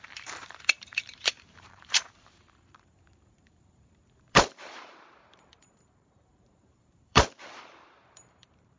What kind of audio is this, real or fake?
fake